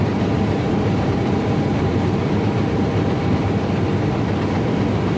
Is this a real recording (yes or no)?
no